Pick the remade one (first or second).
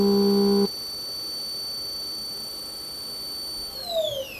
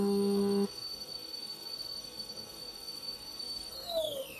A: second